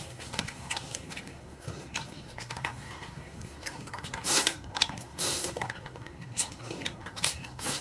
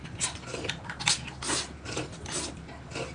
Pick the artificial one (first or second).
first